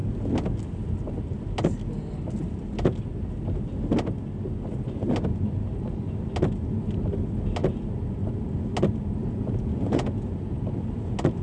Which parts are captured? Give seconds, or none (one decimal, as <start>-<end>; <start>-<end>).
0.0-9.2; 10.3-11.4